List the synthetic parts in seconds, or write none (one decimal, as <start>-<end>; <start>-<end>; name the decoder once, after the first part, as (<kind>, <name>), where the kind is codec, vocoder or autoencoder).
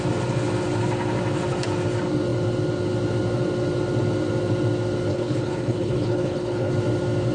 5.1-6.7 (codec, HILCodec)